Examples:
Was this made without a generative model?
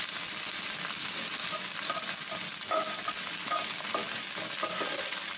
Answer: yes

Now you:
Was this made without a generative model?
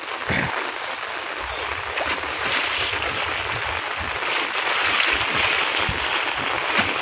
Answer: yes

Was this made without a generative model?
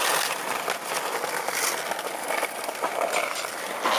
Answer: yes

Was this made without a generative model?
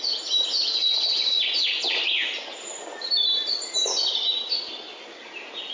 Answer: yes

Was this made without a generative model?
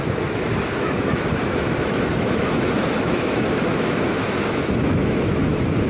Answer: no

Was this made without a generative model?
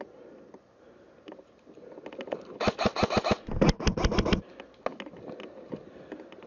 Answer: yes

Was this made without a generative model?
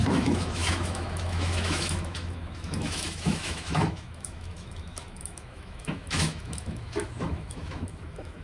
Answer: no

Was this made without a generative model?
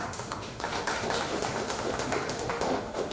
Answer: no